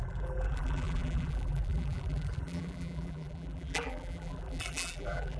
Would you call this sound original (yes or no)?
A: no